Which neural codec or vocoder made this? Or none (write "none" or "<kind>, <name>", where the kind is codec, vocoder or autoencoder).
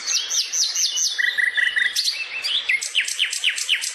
none